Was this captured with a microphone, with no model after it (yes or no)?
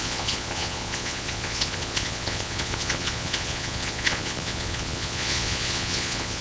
no